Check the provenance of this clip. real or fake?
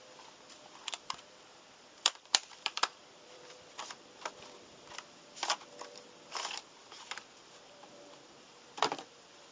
fake